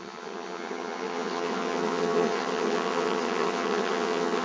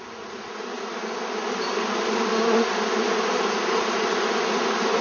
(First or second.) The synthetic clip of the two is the first